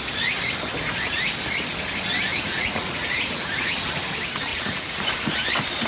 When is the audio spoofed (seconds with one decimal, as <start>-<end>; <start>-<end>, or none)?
2.3-4.0; 4.5-5.1